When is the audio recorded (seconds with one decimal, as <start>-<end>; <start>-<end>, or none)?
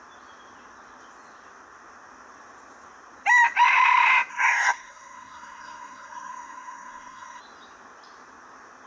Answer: 0.0-4.3; 7.4-8.9